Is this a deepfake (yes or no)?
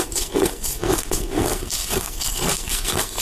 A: yes